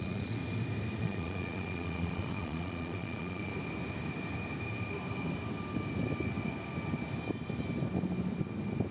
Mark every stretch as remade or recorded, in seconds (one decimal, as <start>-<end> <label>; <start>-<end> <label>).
0.0-0.4 remade; 0.4-1.0 recorded; 1.0-3.5 remade; 3.5-8.9 recorded

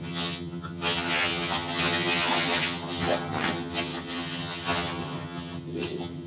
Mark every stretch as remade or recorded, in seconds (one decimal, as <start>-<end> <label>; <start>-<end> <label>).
0.0-6.3 remade

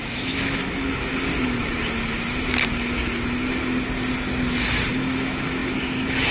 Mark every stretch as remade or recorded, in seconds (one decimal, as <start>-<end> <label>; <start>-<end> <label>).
0.0-1.1 remade; 1.1-4.9 recorded; 4.9-6.3 remade

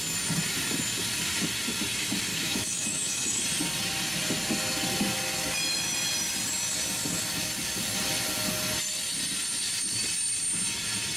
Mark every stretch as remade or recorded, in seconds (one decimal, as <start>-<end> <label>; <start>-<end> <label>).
0.0-2.3 recorded; 2.3-3.4 remade; 3.4-11.2 recorded

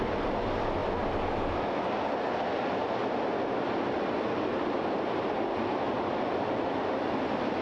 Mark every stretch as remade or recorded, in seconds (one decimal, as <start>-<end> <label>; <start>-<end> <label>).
0.0-7.6 recorded

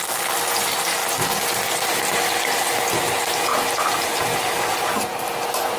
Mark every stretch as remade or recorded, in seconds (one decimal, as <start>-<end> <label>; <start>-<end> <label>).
0.0-3.5 recorded; 3.5-4.4 remade; 4.4-5.8 recorded